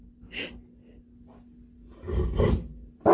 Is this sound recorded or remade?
recorded